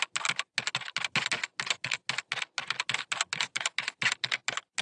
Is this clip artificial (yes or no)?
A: no